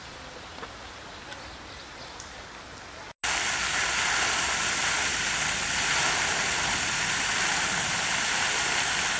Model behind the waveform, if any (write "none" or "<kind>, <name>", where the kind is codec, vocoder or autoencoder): none